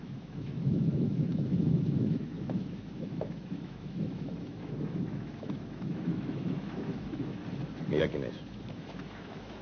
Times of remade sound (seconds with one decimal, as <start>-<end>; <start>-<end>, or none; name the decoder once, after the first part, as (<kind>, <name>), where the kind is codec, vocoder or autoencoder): 0.0-7.4 (autoencoder, DAC-VAE); 8.0-9.6